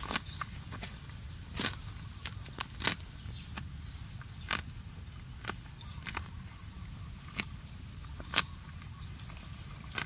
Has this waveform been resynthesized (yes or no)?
no